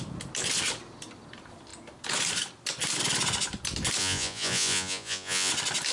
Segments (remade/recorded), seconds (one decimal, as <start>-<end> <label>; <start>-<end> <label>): 0.0-4.0 recorded; 4.0-5.5 remade; 5.5-5.9 recorded